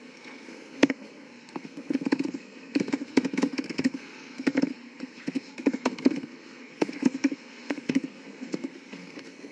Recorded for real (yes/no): no